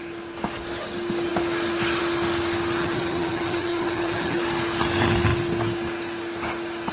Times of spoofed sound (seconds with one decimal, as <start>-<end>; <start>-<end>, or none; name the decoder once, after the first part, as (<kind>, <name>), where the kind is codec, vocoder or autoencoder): 2.8-4.4 (vocoder, HiFi-GAN)